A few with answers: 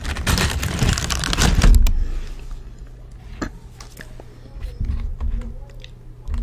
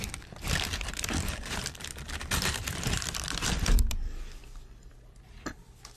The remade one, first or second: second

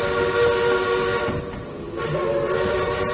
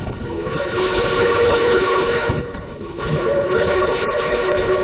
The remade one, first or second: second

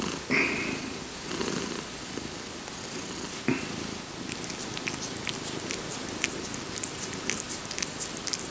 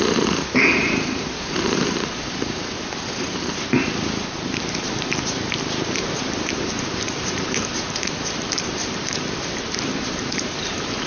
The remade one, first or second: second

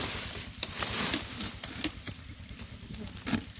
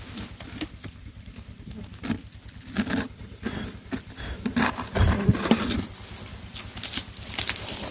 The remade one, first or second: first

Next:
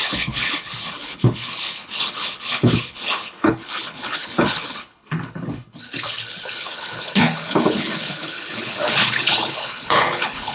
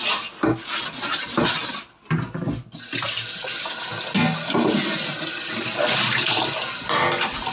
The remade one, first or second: first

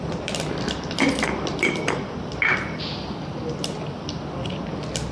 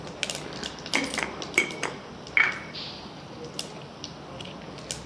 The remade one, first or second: first